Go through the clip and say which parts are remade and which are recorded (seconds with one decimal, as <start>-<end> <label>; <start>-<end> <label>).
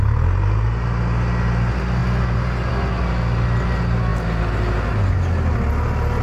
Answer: 0.0-6.2 recorded